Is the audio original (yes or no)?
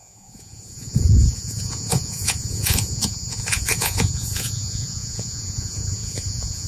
no